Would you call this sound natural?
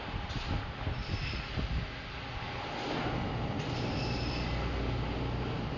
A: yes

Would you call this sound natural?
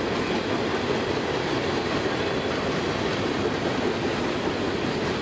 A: yes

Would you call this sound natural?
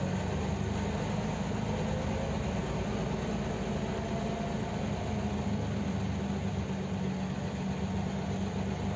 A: yes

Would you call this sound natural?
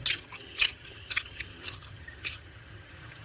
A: no